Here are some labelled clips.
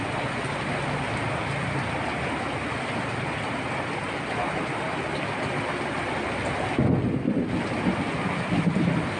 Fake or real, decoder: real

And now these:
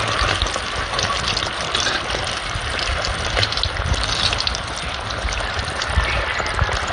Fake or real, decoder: real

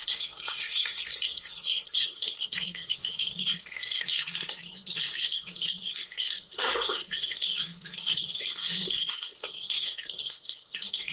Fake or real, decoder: fake, codec, SNAC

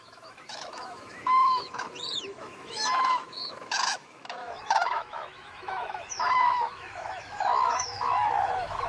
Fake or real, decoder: fake, autoencoder, DAC-VAE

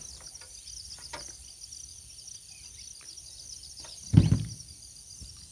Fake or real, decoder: real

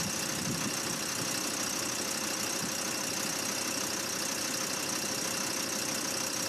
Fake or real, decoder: real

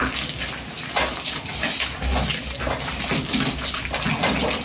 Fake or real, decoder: real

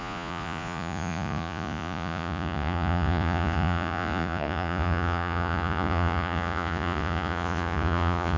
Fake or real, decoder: fake, vocoder, Vocos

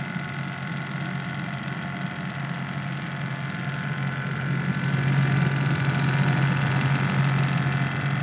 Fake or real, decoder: real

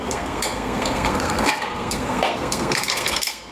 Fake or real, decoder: fake, codec, SNAC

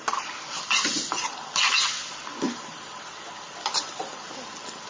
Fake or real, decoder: real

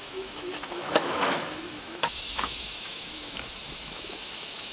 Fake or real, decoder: fake, autoencoder, DAC-VAE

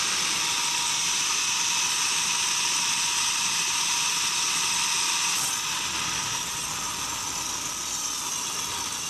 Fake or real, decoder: real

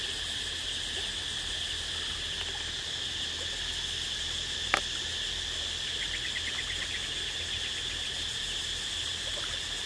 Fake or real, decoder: real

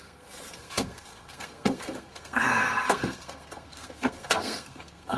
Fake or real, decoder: fake, codec, SNAC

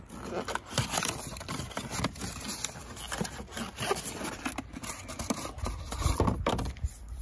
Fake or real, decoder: real